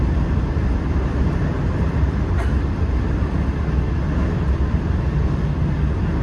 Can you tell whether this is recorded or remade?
recorded